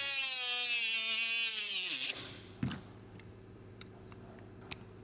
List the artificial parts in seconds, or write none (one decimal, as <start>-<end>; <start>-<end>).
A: 1.5-4.0